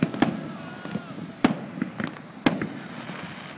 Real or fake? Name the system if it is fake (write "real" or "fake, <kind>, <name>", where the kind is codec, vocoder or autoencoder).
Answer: real